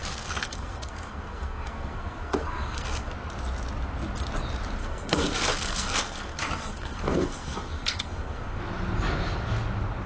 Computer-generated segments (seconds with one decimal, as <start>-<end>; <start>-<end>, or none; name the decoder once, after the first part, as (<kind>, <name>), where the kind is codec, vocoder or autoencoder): 0.0-3.1 (codec, SNAC); 4.8-8.6